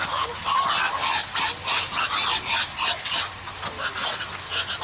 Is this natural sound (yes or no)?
yes